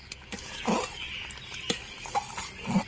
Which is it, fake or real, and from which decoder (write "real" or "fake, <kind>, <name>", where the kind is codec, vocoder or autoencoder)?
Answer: real